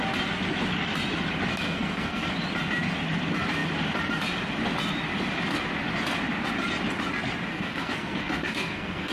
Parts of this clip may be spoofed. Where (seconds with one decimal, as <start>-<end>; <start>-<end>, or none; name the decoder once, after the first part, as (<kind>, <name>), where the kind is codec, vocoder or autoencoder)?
1.5-2.3 (codec, SNAC); 7.5-9.1